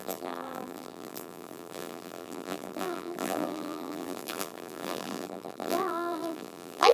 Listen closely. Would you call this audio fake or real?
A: fake